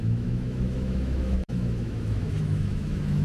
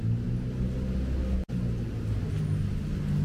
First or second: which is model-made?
first